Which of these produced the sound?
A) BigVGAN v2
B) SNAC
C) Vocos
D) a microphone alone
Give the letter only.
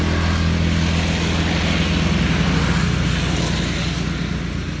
D